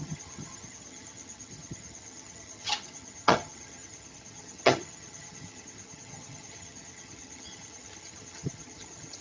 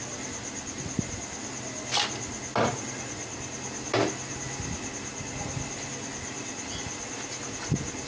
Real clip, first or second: second